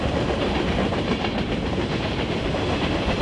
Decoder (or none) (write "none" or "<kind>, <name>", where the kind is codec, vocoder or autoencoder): vocoder, BigVGAN v2